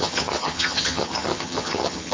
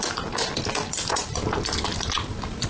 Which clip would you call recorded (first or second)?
second